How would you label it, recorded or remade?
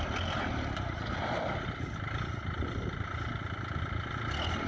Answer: recorded